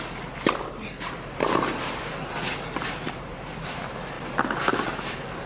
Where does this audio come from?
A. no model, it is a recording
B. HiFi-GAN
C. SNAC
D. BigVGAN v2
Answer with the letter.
A